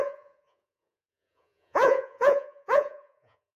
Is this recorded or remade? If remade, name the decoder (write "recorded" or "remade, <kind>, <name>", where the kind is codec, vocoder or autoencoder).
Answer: remade, vocoder, Vocos